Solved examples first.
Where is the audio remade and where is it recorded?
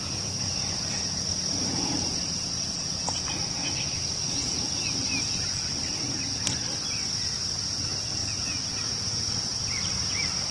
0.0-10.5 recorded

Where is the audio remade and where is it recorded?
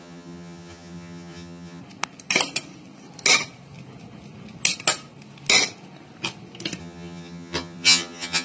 0.0-1.8 remade; 1.8-6.8 recorded; 6.8-8.4 remade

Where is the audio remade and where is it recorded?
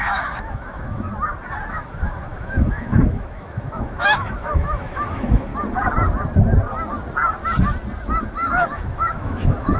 0.0-1.1 remade; 1.1-1.7 recorded; 1.7-5.5 remade; 5.5-8.2 recorded; 8.2-9.8 remade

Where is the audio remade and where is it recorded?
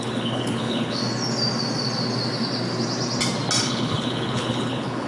0.0-1.0 remade; 1.0-3.6 recorded; 3.6-5.1 remade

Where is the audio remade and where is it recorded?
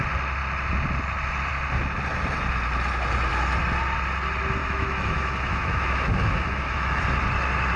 0.0-4.6 recorded; 4.6-7.0 remade; 7.0-7.8 recorded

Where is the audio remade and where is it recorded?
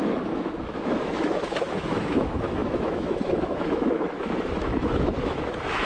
0.0-5.9 remade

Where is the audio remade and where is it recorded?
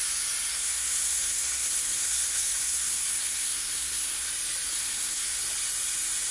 0.0-0.5 recorded; 0.5-4.3 remade; 4.3-4.7 recorded; 4.7-5.4 remade; 5.4-6.3 recorded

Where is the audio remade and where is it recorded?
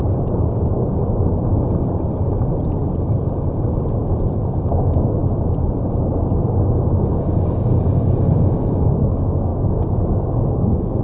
0.0-0.9 remade; 0.9-4.4 recorded; 4.4-5.2 remade; 5.2-7.0 recorded; 7.0-11.0 remade